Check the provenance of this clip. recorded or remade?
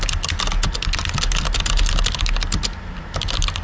recorded